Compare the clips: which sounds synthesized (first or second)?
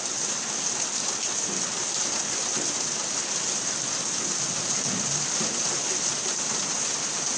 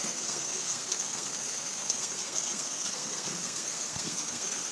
second